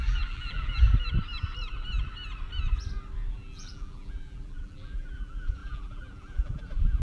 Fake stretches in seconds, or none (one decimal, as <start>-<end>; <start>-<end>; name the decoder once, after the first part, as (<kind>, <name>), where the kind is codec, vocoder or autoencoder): 0.0-0.9 (vocoder, BigVGAN v2); 3.3-7.0